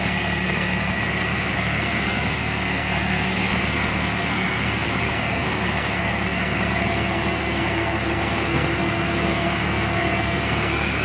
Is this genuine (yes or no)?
no